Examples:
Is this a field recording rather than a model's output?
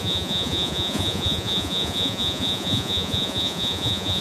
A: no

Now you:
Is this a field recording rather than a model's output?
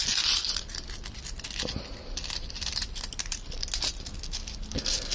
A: yes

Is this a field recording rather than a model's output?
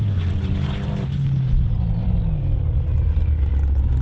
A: yes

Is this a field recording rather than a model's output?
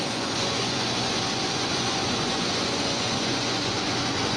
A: no